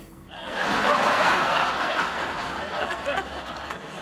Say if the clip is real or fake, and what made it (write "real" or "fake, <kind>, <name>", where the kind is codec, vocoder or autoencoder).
fake, codec, SNAC